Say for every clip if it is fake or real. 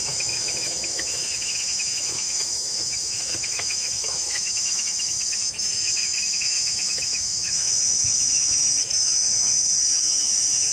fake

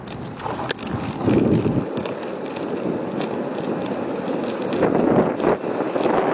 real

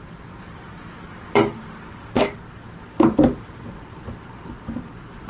real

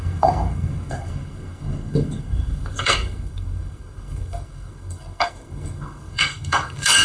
fake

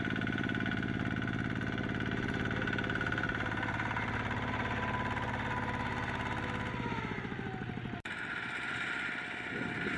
real